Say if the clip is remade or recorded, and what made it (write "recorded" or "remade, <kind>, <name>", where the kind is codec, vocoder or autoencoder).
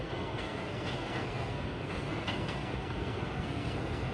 remade, codec, SNAC